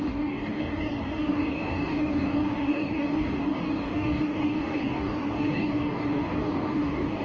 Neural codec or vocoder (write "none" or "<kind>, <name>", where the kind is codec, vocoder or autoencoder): codec, DAC